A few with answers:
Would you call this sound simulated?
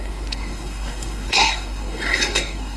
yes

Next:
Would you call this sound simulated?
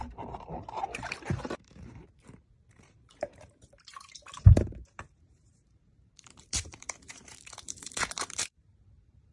yes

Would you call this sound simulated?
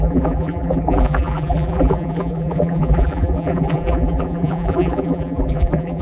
yes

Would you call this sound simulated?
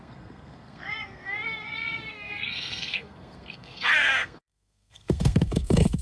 yes